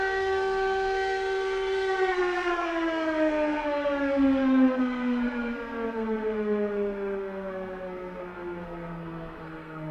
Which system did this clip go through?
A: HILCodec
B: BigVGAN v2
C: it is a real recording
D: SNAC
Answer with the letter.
D